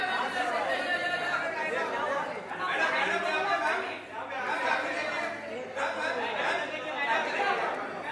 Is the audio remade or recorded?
recorded